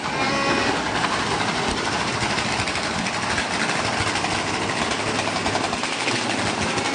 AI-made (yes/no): no